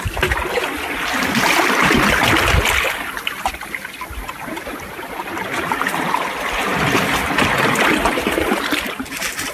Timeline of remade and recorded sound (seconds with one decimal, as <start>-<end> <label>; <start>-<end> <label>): 0.0-9.5 recorded

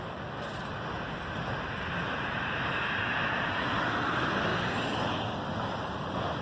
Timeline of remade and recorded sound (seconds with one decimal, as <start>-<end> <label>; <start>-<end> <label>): 0.0-6.4 recorded

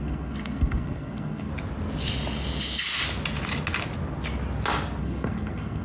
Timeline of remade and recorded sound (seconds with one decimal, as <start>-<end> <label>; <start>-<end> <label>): 0.0-1.5 remade; 1.5-5.0 recorded; 5.0-5.8 remade

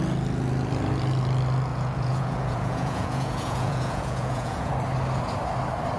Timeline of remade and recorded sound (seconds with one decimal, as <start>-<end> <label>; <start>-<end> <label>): 0.0-1.7 recorded; 1.7-4.7 remade; 4.7-6.0 recorded

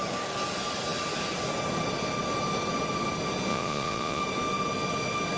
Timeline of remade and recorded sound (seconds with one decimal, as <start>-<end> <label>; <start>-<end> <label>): 0.0-3.5 recorded; 3.5-4.2 remade; 4.2-5.4 recorded